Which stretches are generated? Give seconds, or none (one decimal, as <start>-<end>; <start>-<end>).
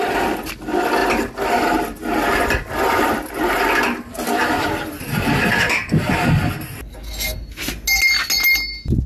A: none